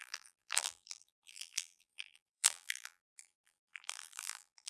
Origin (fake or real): fake